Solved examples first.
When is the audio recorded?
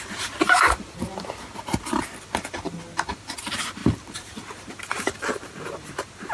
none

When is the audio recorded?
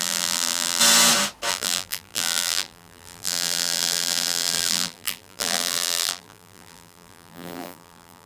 0.8-1.5